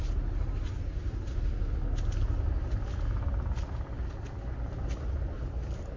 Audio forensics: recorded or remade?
recorded